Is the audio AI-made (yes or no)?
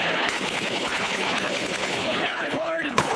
yes